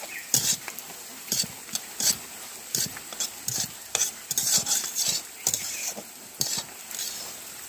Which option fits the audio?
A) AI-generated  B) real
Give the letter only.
A